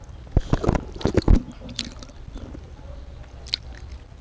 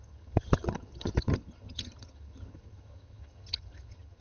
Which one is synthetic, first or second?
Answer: second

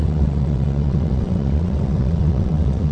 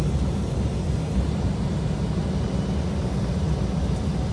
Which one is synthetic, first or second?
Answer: first